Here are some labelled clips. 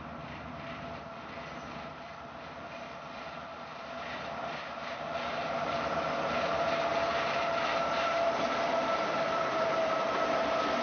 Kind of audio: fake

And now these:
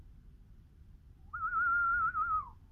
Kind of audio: real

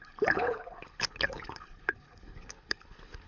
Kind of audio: fake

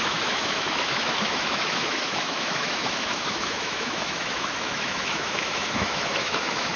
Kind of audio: fake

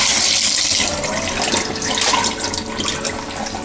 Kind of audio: real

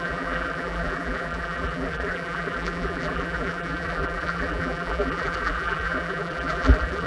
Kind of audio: fake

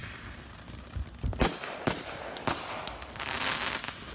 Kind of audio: real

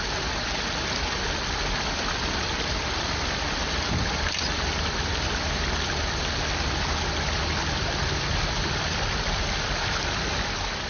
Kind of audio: real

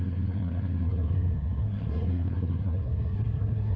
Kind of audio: fake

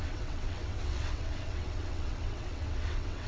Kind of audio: fake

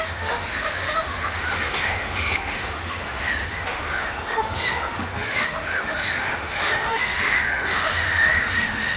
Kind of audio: fake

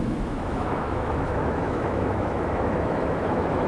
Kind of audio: fake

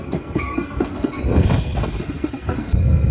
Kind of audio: fake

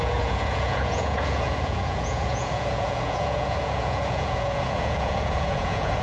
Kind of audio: fake